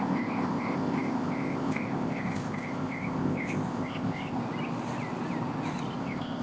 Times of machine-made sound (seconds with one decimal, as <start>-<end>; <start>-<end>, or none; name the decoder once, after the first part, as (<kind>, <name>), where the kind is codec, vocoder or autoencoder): 0.0-4.4 (codec, ZipCodec); 6.0-6.4